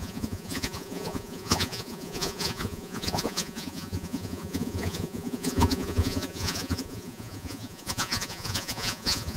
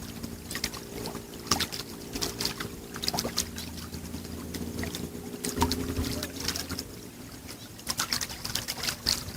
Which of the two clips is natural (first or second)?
second